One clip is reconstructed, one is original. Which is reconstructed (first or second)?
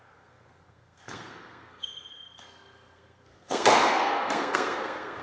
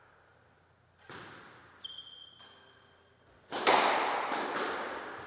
first